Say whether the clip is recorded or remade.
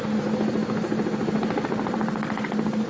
recorded